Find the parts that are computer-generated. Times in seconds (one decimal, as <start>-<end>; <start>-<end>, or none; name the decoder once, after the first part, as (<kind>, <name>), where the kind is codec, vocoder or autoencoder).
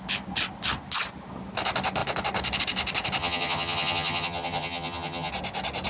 3.2-5.3 (vocoder, HiFi-GAN)